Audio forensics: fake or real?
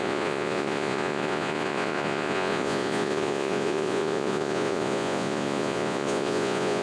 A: fake